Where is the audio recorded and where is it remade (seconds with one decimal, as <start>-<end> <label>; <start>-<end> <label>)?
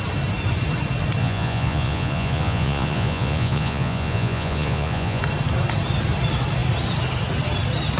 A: 0.0-1.2 recorded; 1.2-5.2 remade; 5.2-8.0 recorded